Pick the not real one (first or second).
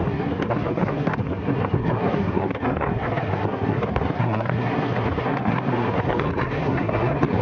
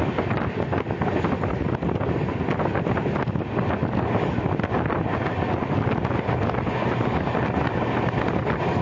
first